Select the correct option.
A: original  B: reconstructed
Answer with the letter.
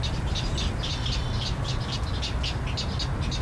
A